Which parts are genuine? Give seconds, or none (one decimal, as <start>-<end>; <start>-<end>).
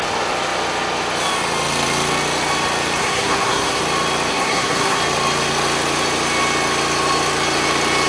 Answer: 0.0-3.0; 3.8-4.3; 5.0-8.1